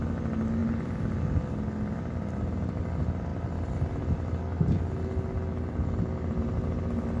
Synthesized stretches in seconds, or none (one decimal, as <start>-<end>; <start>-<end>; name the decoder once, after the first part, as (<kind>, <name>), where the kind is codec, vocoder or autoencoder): none